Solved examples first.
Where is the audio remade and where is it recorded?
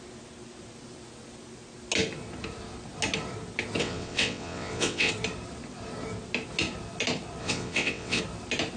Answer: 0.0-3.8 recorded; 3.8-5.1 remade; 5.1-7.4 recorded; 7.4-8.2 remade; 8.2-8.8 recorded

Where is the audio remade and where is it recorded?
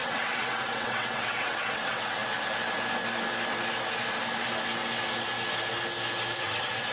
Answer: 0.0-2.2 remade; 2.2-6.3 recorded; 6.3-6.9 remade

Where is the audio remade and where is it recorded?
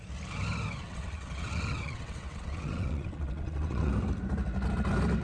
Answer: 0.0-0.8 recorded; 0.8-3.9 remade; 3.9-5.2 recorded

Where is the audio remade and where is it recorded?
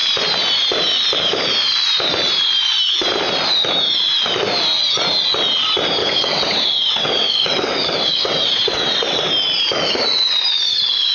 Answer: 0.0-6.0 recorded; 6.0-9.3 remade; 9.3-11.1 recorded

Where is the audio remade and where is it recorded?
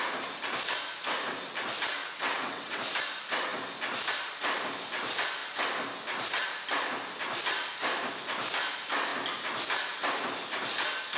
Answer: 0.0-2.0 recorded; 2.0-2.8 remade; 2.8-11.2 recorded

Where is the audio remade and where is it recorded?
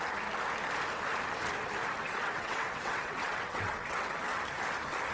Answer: 0.0-2.0 recorded; 2.0-4.4 remade; 4.4-5.1 recorded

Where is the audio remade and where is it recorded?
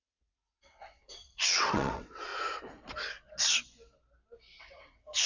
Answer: 0.0-2.3 remade; 2.3-4.6 recorded; 4.6-5.3 remade